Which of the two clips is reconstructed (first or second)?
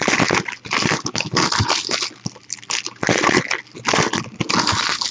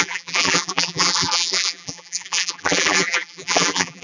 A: second